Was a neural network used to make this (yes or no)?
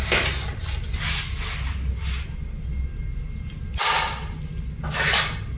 no